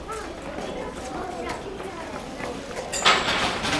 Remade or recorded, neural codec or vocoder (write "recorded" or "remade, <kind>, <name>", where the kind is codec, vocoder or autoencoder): remade, vocoder, BigVGAN v2